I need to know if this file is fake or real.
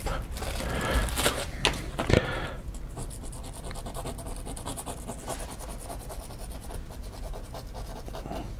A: real